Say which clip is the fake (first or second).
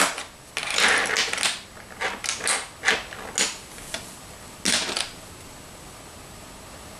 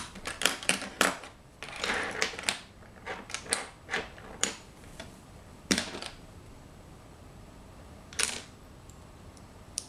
second